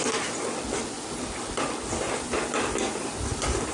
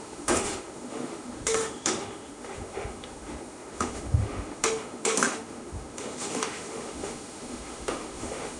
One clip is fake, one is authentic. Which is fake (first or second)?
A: second